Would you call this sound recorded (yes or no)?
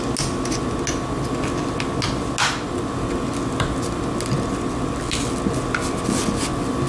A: yes